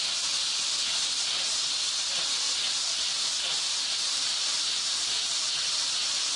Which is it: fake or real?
real